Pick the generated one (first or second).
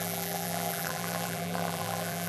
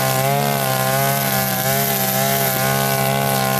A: first